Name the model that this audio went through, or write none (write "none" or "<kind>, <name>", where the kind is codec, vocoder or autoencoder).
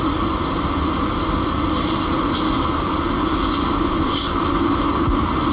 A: none